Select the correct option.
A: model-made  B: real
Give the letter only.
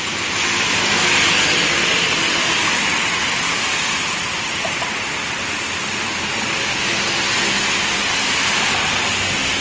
B